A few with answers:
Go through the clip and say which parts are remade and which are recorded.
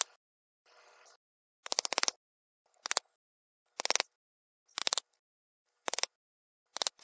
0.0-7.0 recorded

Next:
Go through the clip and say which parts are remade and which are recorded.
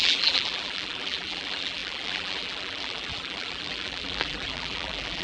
0.0-5.2 remade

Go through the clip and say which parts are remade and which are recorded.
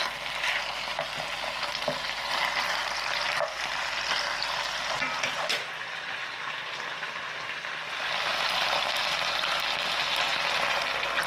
0.0-0.9 recorded; 0.9-5.8 remade; 5.8-11.3 recorded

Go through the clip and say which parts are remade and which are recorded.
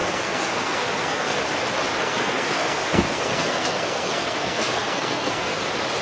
0.0-1.4 remade; 1.4-2.0 recorded; 2.0-5.6 remade; 5.6-6.0 recorded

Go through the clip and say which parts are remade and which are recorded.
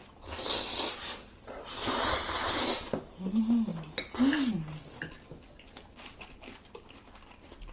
0.0-7.7 recorded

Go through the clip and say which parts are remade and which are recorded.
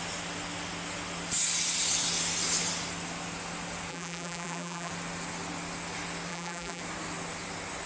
0.0-3.9 recorded; 3.9-4.9 remade; 4.9-6.3 recorded; 6.3-6.8 remade; 6.8-7.9 recorded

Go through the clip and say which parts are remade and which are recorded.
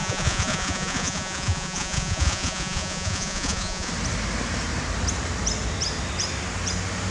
0.0-3.9 remade; 3.9-7.1 recorded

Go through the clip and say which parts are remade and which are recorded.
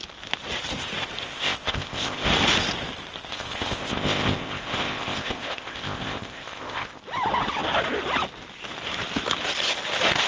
0.0-1.2 recorded; 1.2-2.3 remade; 2.3-3.3 recorded; 3.3-7.0 remade; 7.0-10.3 recorded